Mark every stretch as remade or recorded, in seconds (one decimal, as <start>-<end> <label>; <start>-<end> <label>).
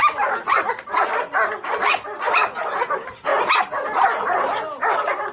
0.0-5.3 recorded